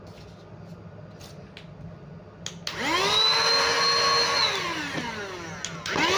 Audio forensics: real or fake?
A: real